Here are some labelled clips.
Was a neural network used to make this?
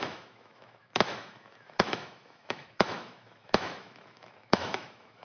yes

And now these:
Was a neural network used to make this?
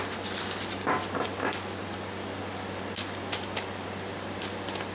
no